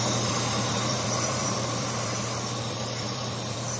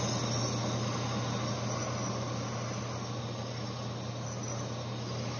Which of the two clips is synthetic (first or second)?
first